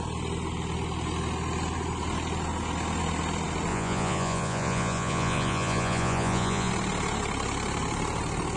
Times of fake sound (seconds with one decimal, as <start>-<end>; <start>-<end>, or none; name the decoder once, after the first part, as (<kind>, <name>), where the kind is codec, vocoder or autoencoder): 3.7-6.7 (vocoder, Vocos)